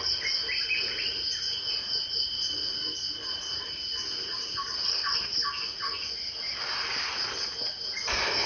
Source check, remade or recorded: recorded